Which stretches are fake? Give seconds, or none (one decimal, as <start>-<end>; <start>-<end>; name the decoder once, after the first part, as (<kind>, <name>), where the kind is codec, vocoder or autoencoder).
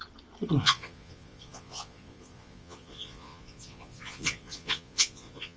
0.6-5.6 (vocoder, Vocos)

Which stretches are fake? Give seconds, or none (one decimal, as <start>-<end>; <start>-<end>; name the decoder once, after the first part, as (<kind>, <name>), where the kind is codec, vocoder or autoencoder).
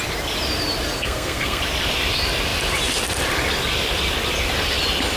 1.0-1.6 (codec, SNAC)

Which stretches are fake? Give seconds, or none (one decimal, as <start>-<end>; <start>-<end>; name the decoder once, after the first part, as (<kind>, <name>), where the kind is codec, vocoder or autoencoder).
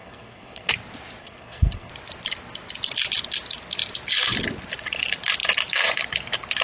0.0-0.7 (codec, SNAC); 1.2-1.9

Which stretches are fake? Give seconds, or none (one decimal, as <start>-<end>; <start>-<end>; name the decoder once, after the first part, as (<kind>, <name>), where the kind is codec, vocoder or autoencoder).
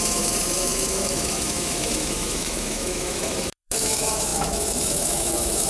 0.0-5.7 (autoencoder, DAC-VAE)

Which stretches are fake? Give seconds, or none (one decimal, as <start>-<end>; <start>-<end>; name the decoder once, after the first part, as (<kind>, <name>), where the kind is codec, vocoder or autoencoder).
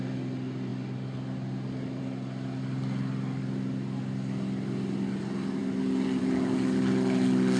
none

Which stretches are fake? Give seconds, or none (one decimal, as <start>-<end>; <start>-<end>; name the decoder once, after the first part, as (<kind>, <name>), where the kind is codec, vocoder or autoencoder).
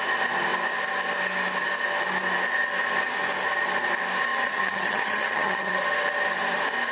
4.3-5.8 (vocoder, HiFi-GAN)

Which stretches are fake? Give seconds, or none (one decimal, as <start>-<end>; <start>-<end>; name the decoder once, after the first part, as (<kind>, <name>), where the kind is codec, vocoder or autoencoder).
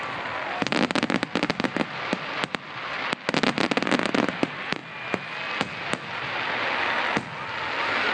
none